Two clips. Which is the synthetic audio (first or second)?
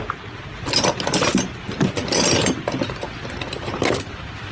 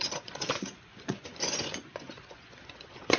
second